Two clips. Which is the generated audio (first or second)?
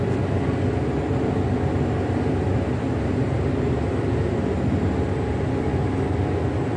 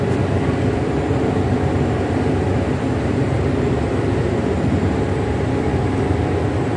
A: second